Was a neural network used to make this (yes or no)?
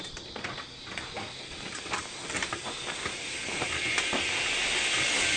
yes